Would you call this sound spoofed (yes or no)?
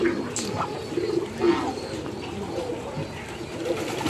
no